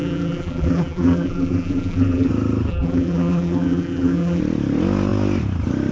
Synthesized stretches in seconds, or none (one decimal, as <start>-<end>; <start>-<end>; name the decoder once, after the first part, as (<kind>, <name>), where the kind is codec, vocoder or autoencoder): 0.0-2.3 (vocoder, BigVGAN v2); 2.7-4.4